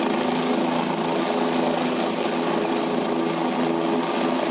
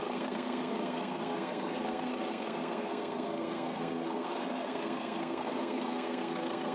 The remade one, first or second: second